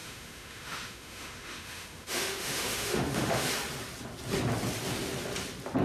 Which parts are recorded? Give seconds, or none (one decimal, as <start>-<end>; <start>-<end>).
3.5-5.8